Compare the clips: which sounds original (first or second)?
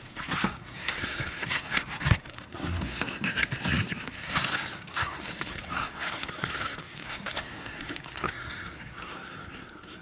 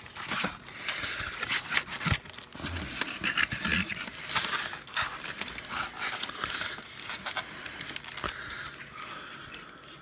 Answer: second